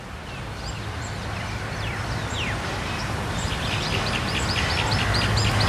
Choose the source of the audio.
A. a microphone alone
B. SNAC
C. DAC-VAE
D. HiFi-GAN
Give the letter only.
A